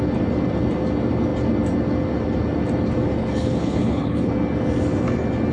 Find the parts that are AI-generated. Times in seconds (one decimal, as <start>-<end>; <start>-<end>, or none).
3.2-4.3